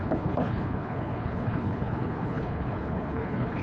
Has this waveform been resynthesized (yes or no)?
yes